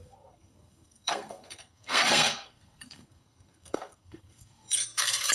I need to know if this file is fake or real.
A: fake